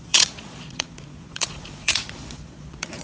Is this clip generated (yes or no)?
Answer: yes